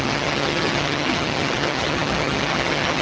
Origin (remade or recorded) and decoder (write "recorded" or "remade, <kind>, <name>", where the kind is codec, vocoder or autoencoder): remade, vocoder, HiFi-GAN